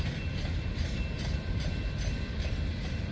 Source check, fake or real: real